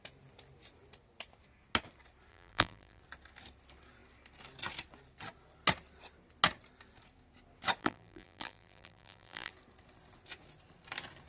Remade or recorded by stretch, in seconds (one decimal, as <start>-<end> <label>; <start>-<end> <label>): 0.0-2.3 recorded; 2.3-3.0 remade; 3.0-7.8 recorded; 7.8-9.5 remade; 9.5-11.3 recorded